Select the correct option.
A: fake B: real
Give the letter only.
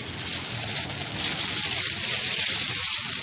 B